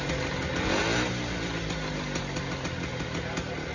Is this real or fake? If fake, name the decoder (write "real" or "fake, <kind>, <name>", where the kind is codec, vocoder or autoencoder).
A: real